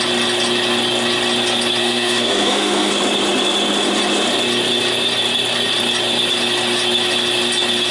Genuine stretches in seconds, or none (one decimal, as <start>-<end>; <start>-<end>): 0.0-1.8; 2.9-7.9